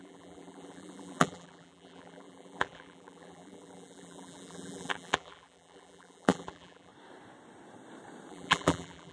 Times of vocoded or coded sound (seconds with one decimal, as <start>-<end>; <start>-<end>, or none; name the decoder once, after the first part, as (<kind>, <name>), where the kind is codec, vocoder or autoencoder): 0.0-6.9 (vocoder, BigVGAN v2); 8.3-9.1